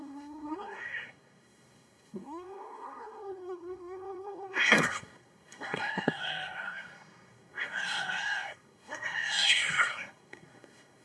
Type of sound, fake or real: fake